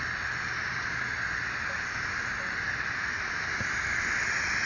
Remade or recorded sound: recorded